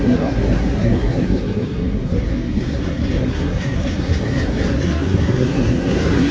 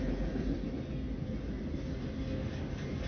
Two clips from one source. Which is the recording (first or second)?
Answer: second